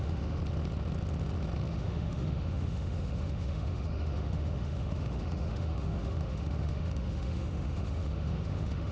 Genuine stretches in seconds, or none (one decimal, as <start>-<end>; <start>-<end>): 0.4-1.7